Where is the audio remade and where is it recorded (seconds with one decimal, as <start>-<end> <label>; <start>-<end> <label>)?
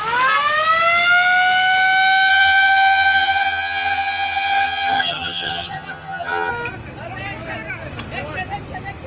0.0-2.3 recorded; 2.3-6.5 remade; 6.5-9.1 recorded